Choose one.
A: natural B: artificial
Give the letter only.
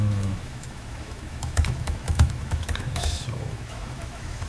B